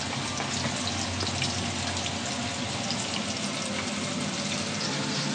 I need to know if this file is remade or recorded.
recorded